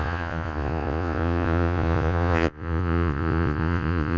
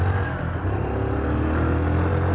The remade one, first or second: first